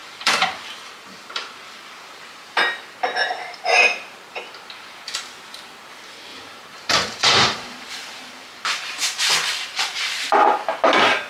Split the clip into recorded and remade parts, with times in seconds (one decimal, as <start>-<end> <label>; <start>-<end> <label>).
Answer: 0.0-4.4 remade; 4.4-6.3 recorded; 6.3-10.3 remade; 10.3-11.3 recorded